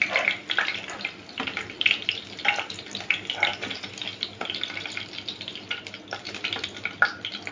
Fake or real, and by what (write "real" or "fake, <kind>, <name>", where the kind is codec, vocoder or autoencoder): real